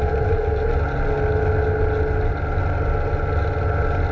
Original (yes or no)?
yes